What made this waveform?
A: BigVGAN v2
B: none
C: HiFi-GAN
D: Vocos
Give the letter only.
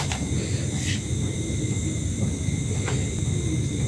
B